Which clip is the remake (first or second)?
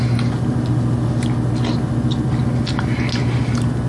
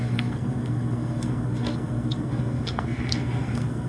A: second